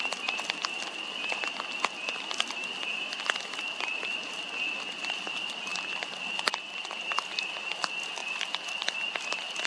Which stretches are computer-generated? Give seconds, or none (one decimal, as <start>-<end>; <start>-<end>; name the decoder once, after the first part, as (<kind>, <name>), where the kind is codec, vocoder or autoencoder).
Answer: none

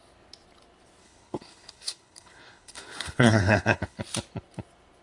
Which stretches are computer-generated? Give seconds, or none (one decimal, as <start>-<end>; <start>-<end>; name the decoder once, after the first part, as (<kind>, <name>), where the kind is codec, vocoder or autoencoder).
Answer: 1.0-4.0 (codec, HILCodec)

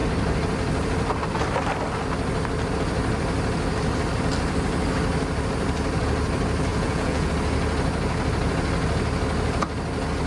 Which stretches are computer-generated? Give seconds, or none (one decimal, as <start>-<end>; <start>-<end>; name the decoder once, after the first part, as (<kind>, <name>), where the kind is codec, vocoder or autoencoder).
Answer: 6.7-7.3 (vocoder, Vocos)

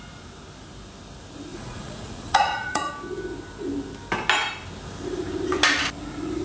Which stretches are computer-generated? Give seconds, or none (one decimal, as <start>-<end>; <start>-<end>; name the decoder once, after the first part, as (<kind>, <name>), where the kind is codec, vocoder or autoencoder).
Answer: 1.5-2.9 (vocoder, Vocos)

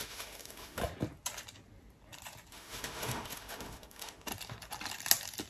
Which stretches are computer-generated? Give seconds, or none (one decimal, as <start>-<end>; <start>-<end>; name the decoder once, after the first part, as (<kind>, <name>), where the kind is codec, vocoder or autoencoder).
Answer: 0.0-0.8 (autoencoder, DAC-VAE); 2.5-4.3

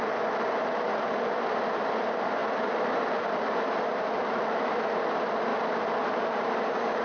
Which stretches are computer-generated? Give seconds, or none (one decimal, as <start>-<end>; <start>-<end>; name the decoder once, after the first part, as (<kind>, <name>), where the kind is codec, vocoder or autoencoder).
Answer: 0.0-5.5 (vocoder, BigVGAN v2); 6.1-7.0

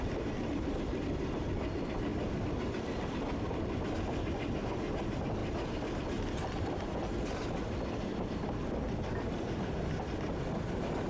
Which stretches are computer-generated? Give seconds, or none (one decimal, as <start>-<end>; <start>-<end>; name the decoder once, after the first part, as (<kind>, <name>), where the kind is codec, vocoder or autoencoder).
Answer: none

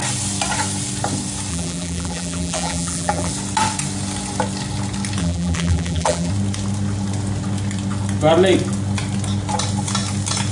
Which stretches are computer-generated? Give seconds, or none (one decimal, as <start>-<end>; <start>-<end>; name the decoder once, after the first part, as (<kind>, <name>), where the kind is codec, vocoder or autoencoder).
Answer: 1.5-3.3 (vocoder, BigVGAN v2); 5.2-6.3